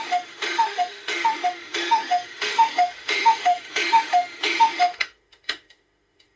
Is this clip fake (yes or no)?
yes